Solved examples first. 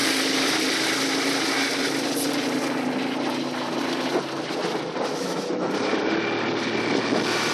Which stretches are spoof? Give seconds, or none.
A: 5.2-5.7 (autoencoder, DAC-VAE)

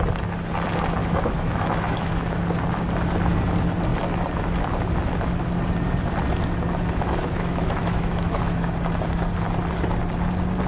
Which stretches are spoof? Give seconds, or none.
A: 1.0-2.4 (autoencoder, DAC-VAE); 7.2-8.7